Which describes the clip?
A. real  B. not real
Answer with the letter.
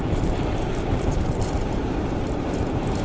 B